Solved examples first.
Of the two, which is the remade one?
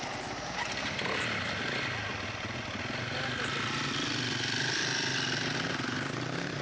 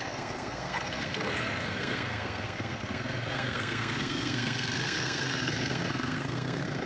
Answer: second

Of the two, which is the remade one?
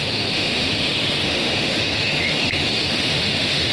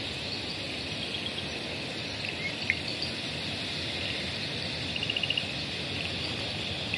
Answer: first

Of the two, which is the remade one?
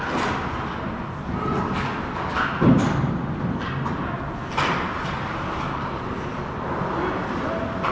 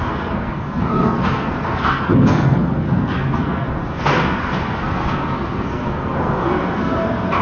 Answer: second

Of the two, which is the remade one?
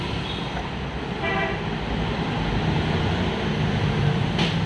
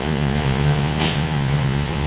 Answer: second